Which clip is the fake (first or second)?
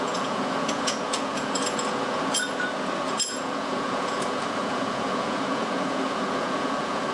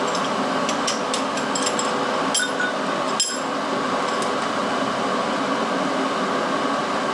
first